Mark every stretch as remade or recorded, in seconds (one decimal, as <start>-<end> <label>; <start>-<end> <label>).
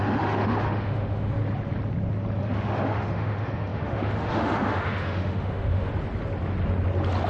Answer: 0.0-1.4 remade; 1.4-2.4 recorded; 2.4-5.9 remade; 5.9-7.3 recorded